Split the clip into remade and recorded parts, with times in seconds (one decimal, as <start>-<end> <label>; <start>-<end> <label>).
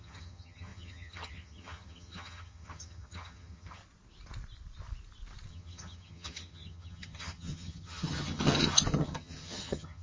0.0-3.8 remade; 3.8-5.5 recorded; 5.5-10.0 remade